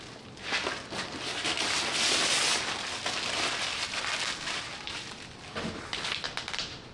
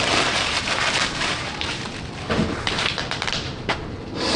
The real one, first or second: first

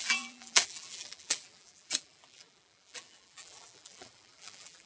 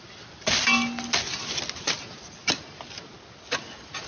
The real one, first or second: second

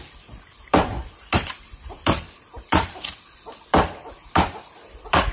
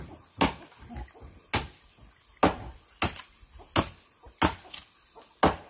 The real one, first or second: second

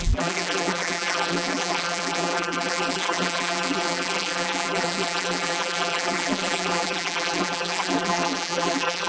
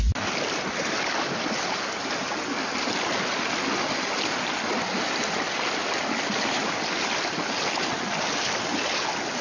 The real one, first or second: second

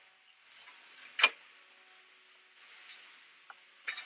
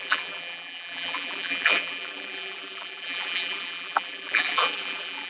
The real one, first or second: first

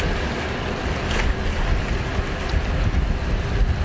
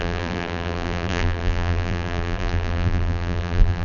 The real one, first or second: first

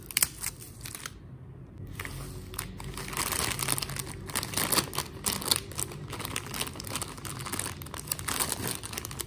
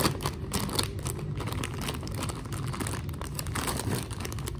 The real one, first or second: first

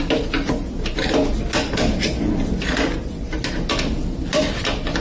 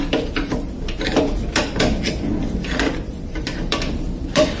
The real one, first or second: first